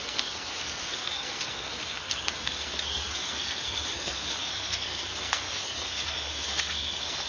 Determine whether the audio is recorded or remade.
remade